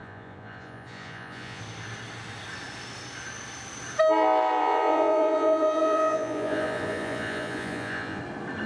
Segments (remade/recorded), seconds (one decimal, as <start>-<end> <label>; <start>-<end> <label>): 0.0-1.6 remade; 1.6-4.6 recorded; 4.6-8.2 remade; 8.2-8.7 recorded